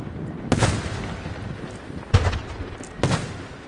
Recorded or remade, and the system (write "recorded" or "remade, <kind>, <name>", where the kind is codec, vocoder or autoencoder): recorded